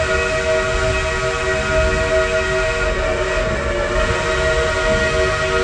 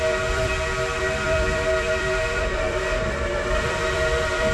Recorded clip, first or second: first